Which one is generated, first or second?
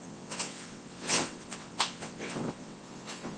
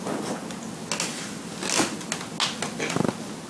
first